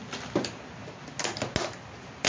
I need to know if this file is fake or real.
real